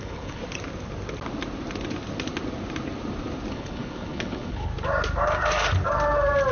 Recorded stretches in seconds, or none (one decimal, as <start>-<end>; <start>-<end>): 0.4-3.5; 4.7-6.5